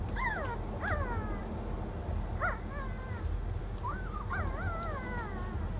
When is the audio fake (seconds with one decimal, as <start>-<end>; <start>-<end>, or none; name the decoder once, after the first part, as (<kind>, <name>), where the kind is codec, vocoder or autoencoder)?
none